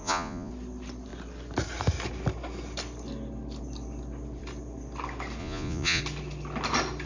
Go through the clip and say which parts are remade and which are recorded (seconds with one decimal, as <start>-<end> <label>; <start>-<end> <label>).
0.0-0.5 remade; 0.5-5.4 recorded; 5.4-6.0 remade; 6.0-7.1 recorded